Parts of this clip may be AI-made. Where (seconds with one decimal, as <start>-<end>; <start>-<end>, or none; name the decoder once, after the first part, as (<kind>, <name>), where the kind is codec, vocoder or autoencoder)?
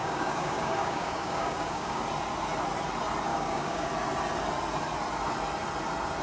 0.0-2.0 (codec, DAC); 3.3-3.9